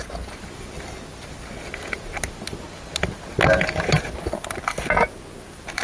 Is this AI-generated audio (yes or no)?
no